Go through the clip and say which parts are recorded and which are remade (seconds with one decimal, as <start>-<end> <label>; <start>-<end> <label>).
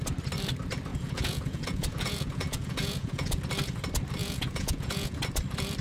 0.0-0.9 recorded; 0.9-3.4 remade; 3.4-4.2 recorded; 4.2-5.2 remade; 5.2-5.8 recorded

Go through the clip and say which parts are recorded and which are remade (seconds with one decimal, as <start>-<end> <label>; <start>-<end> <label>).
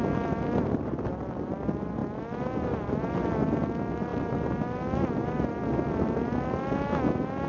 0.0-7.5 recorded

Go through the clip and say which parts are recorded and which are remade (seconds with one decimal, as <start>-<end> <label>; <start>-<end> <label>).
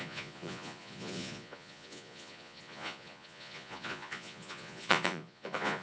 0.0-5.8 remade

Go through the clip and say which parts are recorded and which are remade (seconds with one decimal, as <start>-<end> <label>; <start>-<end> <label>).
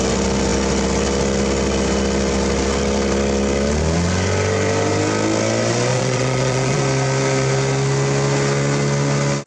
0.0-5.9 recorded; 5.9-6.8 remade; 6.8-9.5 recorded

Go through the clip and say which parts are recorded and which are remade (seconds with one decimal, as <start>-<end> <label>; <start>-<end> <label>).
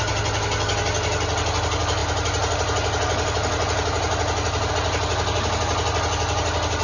0.0-6.8 recorded